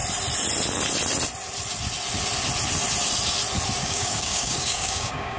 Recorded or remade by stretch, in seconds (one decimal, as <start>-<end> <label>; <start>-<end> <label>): 0.0-3.8 recorded; 3.8-5.4 remade